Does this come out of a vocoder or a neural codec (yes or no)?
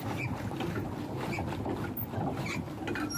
no